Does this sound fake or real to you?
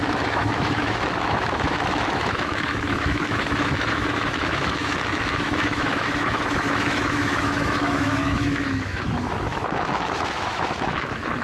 fake